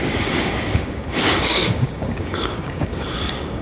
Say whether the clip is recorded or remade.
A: remade